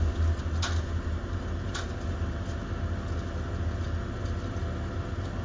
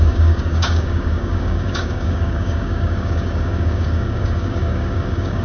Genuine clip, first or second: first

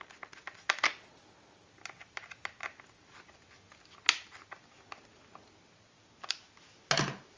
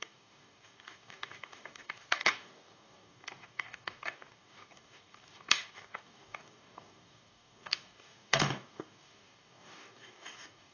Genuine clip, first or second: first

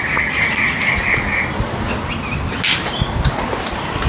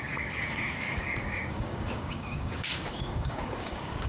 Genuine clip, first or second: first